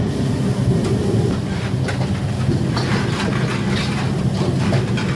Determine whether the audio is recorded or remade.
recorded